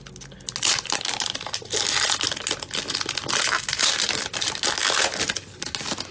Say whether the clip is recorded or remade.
recorded